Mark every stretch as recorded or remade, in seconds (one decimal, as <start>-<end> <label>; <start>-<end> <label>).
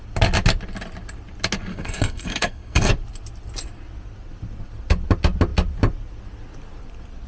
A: 0.0-1.7 recorded; 1.7-2.9 remade; 2.9-7.3 recorded